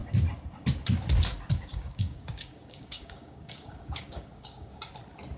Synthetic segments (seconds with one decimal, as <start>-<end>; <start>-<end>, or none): 1.7-4.9